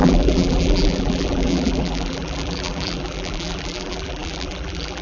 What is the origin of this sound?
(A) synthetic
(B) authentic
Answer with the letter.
A